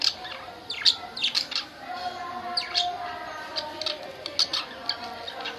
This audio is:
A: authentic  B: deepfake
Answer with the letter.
A